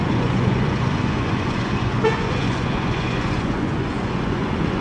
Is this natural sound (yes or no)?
no